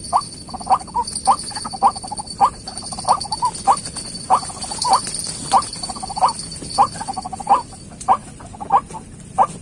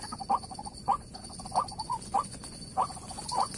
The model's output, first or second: second